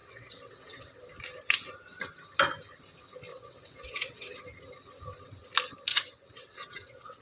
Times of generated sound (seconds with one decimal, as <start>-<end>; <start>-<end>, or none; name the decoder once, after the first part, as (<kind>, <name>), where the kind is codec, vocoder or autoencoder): 0.0-1.0 (vocoder, WaveNeXt); 3.3-4.4; 5.9-7.2